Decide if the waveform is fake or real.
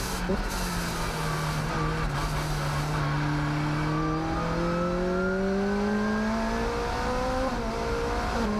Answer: real